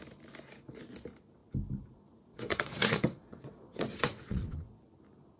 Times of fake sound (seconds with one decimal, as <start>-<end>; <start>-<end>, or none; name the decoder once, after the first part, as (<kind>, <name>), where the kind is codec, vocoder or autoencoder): 2.3-4.8 (vocoder, WaveNeXt)

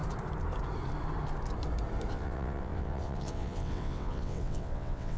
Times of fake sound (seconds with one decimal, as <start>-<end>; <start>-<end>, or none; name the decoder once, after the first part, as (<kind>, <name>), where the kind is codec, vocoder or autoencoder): 2.1-5.2 (vocoder, WaveNeXt)

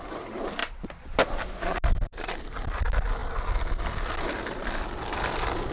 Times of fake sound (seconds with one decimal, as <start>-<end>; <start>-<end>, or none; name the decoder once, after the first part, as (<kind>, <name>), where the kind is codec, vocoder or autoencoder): none

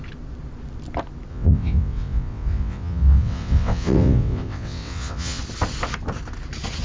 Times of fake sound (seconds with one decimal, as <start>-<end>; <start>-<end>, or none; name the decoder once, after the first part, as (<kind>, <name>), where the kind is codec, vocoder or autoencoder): 1.3-5.4 (vocoder, WaveNeXt)

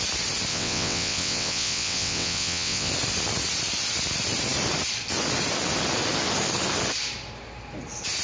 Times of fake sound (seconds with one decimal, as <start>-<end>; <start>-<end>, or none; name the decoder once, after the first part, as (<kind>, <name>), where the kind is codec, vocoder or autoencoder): 0.5-2.9 (vocoder, WaveNeXt)

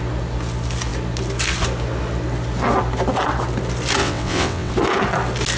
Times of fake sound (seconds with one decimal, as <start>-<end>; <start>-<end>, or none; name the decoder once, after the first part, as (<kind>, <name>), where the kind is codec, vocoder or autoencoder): 4.0-4.7 (vocoder, WaveNeXt)

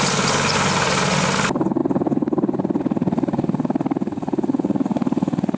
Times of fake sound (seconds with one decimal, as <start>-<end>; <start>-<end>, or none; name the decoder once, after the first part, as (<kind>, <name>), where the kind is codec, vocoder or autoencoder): none

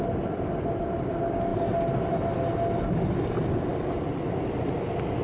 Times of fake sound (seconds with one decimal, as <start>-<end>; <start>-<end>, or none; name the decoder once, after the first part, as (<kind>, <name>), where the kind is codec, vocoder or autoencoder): none